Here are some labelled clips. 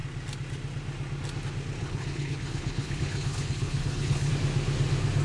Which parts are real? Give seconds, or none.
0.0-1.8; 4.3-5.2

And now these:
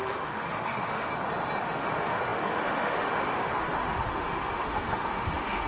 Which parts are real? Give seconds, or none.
1.1-1.6

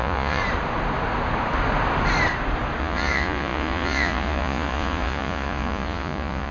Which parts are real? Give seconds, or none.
0.4-2.8

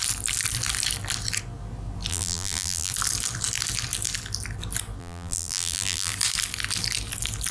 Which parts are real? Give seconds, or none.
0.0-2.1; 2.9-5.0; 6.1-7.5

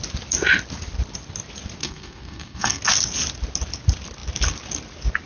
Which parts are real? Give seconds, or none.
0.0-1.8; 2.8-5.3

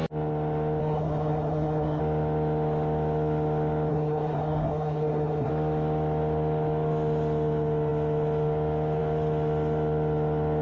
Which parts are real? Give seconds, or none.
0.0-0.8; 2.0-3.9; 5.5-10.6

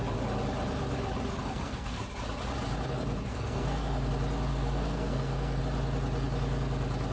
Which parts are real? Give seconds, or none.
0.0-1.4; 2.0-3.3; 4.1-4.5; 5.6-7.1

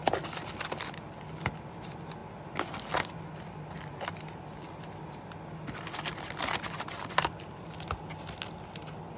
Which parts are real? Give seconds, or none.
0.0-9.2